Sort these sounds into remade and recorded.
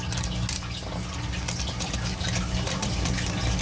recorded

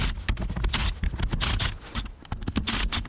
recorded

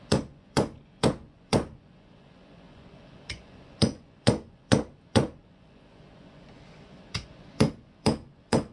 remade